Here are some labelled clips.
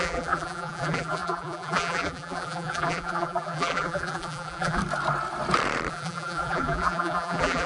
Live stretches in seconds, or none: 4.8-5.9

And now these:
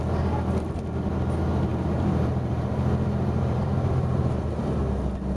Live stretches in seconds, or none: 0.0-1.7; 4.8-5.4

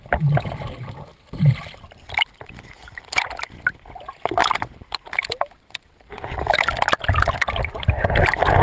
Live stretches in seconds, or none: 0.0-8.6

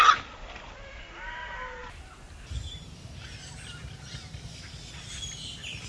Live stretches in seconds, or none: 0.0-1.8; 3.1-5.9